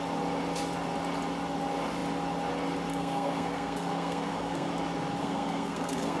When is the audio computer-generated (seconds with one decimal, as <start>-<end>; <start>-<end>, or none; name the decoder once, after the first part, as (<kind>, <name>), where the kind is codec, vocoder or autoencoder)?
2.9-4.7 (codec, SNAC); 5.2-6.2

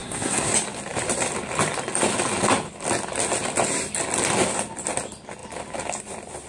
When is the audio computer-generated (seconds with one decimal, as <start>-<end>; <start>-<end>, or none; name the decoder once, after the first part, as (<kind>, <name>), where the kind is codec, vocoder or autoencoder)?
0.0-0.5 (codec, SNAC)

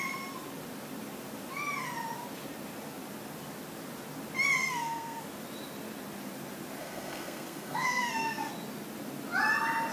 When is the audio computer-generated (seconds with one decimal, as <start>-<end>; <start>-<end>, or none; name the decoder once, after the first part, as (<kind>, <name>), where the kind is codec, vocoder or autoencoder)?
4.6-5.2 (codec, SNAC); 6.8-8.5

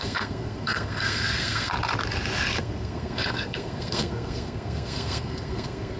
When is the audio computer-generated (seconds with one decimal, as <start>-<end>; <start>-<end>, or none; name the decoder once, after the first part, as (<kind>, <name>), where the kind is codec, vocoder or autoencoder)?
0.0-1.7 (codec, SNAC); 2.6-6.0

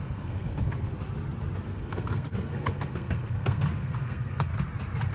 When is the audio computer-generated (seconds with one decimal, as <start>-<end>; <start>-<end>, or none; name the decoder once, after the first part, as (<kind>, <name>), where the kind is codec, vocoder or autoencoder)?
0.0-0.9 (codec, SNAC); 1.6-4.5

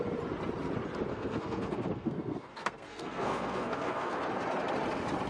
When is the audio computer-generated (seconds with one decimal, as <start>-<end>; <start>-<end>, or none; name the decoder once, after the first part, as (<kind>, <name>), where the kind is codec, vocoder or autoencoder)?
1.1-4.3 (codec, SNAC)

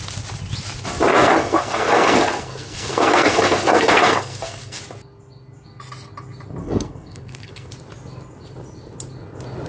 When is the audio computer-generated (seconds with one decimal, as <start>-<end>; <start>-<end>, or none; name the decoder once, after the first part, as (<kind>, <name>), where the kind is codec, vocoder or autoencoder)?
1.1-4.8 (codec, SNAC); 6.6-7.7